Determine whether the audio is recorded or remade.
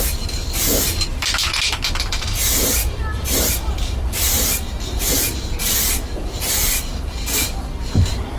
remade